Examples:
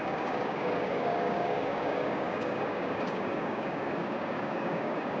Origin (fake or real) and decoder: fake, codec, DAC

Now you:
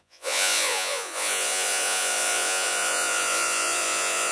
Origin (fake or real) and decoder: fake, vocoder, Vocos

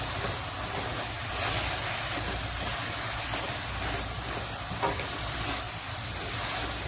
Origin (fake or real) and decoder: real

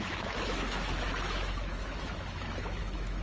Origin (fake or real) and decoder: fake, autoencoder, DAC-VAE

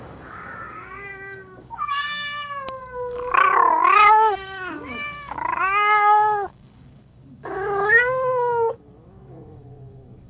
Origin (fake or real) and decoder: fake, codec, DAC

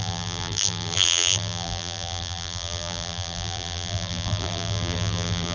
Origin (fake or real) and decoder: fake, vocoder, BigVGAN v2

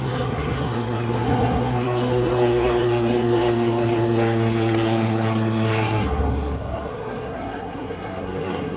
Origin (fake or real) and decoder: fake, codec, SNAC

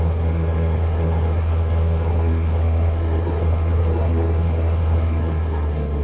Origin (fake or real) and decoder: fake, codec, SNAC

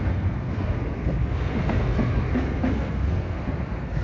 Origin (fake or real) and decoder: fake, codec, SNAC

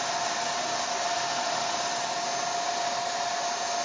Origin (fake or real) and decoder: real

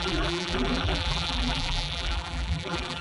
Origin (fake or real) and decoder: fake, vocoder, BigVGAN v2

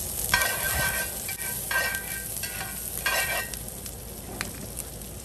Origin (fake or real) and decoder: real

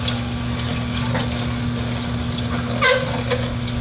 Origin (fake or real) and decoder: real